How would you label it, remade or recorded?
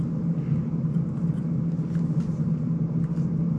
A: recorded